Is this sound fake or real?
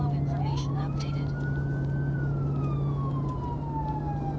real